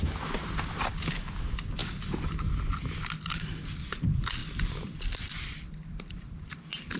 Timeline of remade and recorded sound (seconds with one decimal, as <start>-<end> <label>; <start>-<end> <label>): 0.0-1.8 recorded; 1.8-2.5 remade; 2.5-4.4 recorded; 4.4-6.5 remade; 6.5-7.0 recorded